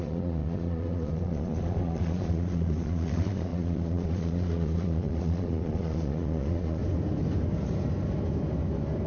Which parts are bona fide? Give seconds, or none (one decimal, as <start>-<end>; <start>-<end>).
6.8-9.1